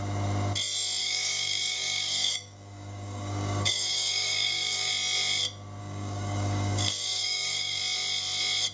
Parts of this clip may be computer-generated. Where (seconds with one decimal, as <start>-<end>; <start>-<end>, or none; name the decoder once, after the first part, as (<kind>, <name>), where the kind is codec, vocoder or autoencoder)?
1.0-4.9 (codec, DAC); 5.8-7.8